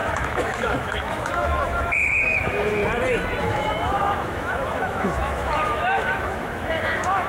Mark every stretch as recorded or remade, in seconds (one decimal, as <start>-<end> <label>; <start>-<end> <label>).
0.0-2.8 remade; 2.8-3.4 recorded; 3.4-7.3 remade